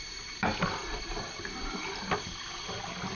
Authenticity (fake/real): real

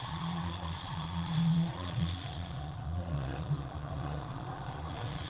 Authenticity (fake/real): fake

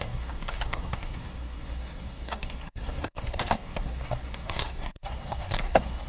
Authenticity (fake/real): fake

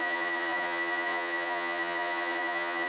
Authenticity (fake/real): fake